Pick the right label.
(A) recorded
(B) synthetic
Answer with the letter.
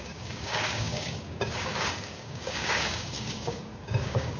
B